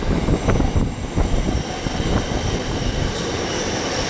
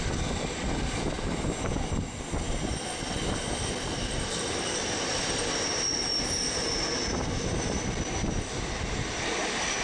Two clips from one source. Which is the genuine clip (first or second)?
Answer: second